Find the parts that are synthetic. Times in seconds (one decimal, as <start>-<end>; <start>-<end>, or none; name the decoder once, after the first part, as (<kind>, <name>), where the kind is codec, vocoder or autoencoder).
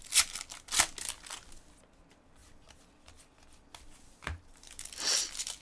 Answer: none